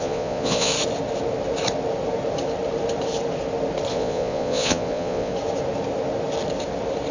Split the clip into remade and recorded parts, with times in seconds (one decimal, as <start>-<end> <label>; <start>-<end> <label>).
0.0-0.7 remade; 0.7-3.9 recorded; 3.9-5.3 remade; 5.3-7.1 recorded